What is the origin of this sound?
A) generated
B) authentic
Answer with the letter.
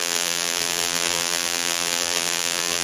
A